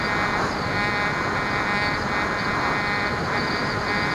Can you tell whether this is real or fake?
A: real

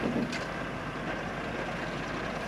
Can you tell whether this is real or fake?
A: real